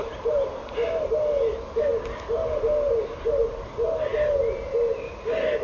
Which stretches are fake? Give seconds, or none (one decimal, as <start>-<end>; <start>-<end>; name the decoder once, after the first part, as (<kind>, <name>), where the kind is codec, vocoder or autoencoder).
none